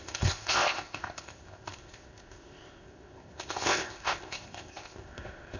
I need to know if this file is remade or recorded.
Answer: remade